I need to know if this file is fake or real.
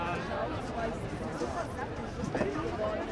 real